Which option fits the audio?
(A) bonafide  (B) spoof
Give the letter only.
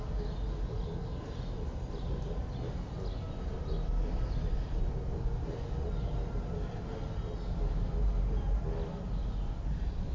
A